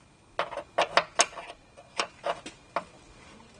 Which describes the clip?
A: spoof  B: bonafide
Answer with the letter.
B